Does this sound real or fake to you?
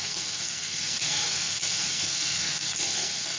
fake